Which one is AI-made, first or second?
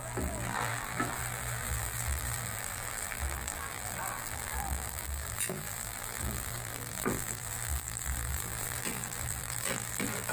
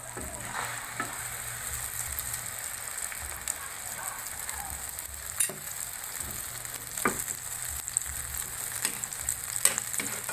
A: first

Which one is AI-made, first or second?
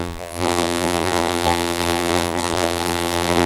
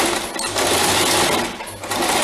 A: first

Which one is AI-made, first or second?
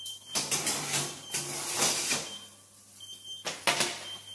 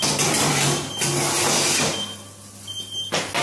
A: first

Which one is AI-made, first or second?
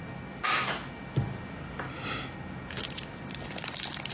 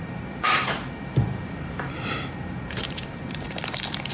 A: second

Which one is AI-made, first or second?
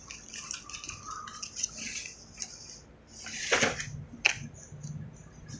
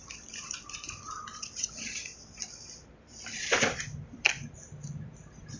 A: second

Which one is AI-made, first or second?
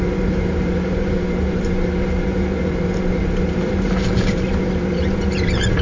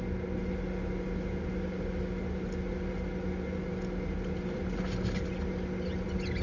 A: first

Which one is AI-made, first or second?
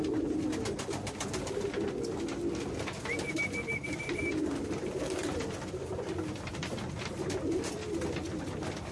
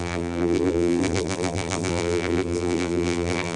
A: second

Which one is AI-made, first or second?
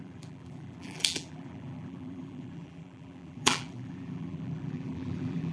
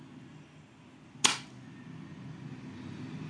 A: first